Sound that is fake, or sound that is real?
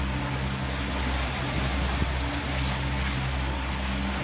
real